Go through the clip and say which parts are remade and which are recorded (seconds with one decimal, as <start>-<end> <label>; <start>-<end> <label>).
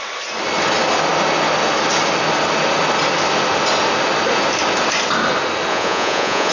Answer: 0.0-5.7 recorded; 5.7-6.5 remade